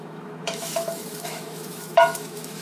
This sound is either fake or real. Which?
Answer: fake